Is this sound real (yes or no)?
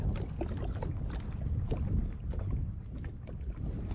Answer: yes